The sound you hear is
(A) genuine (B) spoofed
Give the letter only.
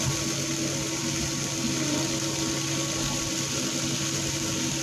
A